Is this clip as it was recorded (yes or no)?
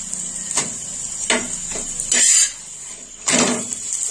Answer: yes